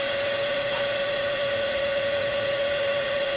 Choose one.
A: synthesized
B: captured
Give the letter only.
A